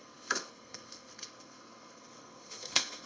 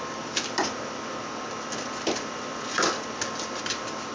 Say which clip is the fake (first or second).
first